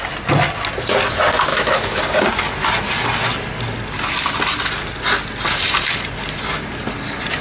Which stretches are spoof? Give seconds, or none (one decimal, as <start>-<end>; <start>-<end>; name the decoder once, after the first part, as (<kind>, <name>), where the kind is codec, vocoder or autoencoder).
1.5-2.0 (autoencoder, DAC-VAE)